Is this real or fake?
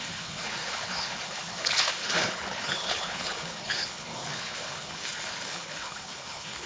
fake